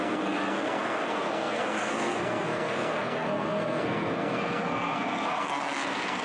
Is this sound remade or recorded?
remade